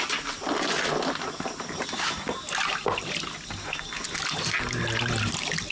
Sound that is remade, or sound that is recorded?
recorded